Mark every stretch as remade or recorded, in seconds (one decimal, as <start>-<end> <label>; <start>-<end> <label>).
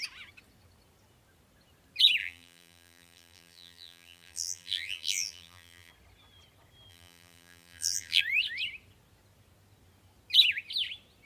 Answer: 0.0-2.2 recorded; 2.2-5.9 remade; 5.9-6.9 recorded; 6.9-8.2 remade; 8.2-11.3 recorded